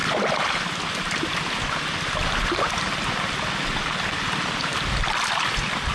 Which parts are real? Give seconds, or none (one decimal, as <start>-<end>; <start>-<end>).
0.0-5.9